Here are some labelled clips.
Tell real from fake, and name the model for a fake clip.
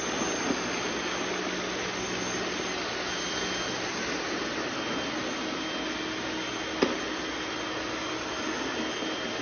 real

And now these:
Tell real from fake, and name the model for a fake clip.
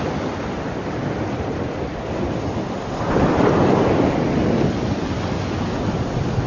real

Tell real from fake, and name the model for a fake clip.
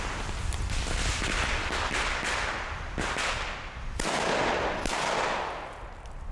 real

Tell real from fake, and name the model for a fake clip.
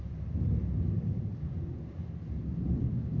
real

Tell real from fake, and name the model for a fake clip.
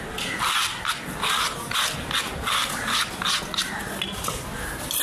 real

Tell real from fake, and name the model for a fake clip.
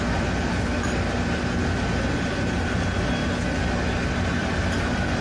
real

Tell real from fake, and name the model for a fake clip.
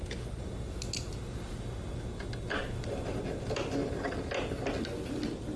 real